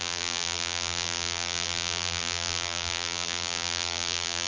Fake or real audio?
fake